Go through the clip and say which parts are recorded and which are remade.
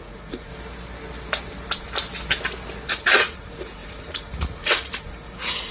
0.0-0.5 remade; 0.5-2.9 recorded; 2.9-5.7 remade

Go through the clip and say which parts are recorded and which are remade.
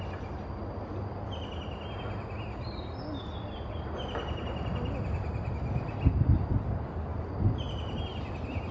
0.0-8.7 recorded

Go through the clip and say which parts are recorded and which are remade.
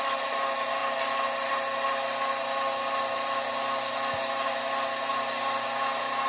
0.0-6.3 recorded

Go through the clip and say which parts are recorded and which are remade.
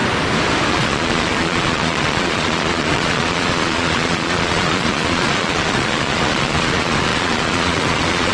0.0-0.7 recorded; 0.7-8.3 remade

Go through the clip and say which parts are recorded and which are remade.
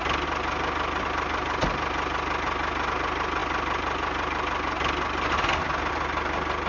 0.0-6.7 recorded